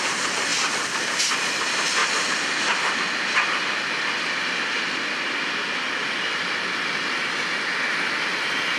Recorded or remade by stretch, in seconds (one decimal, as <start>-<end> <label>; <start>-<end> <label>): 0.0-8.8 recorded